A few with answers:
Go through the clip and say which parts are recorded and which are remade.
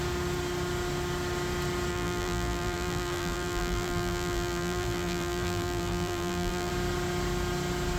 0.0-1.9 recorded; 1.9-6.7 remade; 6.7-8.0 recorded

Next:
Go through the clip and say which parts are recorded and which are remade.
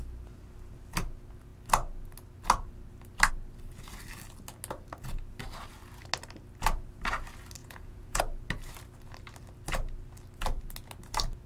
0.0-7.6 recorded; 7.6-8.2 remade; 8.2-11.5 recorded